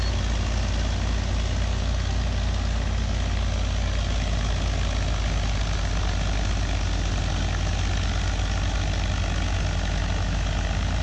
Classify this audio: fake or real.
real